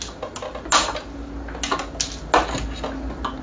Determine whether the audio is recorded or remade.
recorded